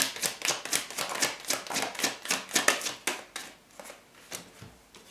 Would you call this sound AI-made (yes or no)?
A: no